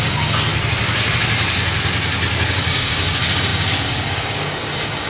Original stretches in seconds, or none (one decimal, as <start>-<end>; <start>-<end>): 0.5-2.5